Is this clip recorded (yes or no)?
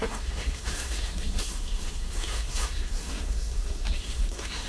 no